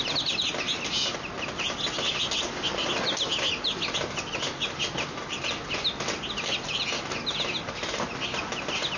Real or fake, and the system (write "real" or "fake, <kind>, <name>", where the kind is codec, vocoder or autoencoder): real